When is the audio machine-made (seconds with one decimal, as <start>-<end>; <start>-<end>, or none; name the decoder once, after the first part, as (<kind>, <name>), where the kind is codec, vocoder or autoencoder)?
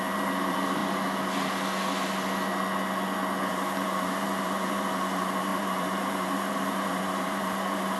0.0-0.8 (vocoder, BigVGAN v2); 3.5-8.0